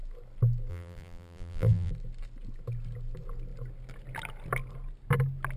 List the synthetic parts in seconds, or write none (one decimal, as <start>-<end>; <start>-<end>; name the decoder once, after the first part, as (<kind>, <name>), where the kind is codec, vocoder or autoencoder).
0.7-1.9 (vocoder, BigVGAN v2)